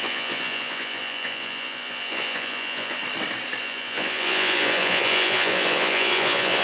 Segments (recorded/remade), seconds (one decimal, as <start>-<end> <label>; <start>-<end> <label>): 0.0-3.0 remade; 3.0-3.6 recorded; 3.6-6.6 remade